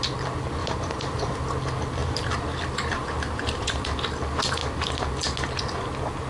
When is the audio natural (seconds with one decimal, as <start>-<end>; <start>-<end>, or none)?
0.0-0.6; 1.4-2.0; 3.9-6.3